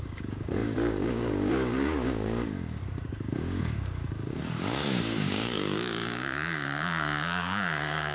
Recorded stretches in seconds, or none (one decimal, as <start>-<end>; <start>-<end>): none